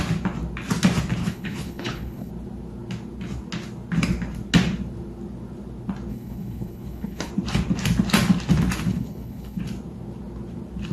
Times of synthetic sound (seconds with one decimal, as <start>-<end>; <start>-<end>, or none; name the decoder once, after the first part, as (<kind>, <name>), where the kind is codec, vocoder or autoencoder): 1.2-2.3 (codec, HILCodec); 6.1-7.3; 8.9-9.6